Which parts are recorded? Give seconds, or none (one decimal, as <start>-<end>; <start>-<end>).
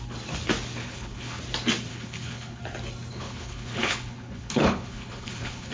0.0-0.8; 1.4-1.9; 2.6-3.1